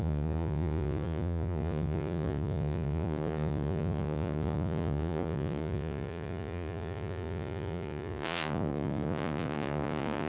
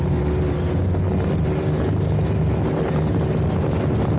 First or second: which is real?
second